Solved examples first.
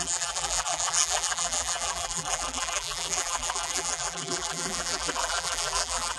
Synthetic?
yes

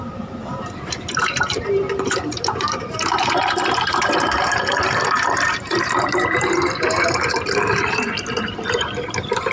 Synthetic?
yes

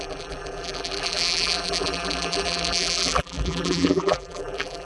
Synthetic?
yes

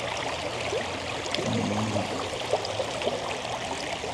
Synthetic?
no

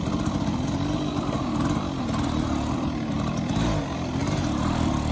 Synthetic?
no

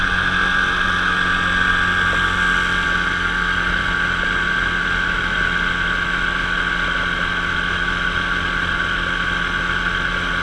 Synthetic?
no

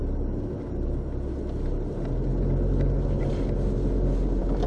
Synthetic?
no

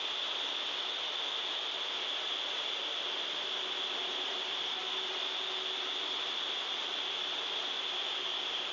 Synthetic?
no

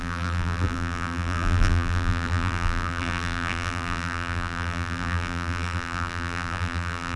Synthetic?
yes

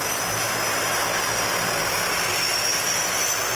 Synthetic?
no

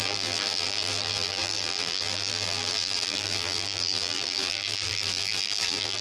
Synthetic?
yes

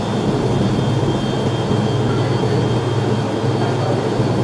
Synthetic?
no